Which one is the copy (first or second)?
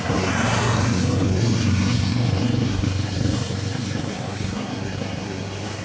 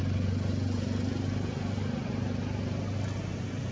first